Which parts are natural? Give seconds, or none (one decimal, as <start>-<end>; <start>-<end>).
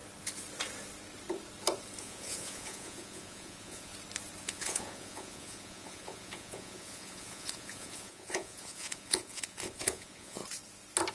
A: 0.0-2.0; 3.9-4.4; 10.4-11.1